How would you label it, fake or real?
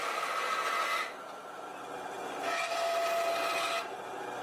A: real